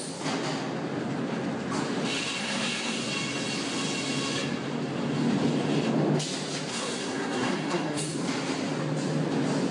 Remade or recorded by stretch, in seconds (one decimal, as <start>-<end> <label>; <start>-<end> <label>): 0.0-2.4 recorded; 2.4-3.1 remade; 3.1-6.7 recorded; 6.7-8.2 remade; 8.2-9.7 recorded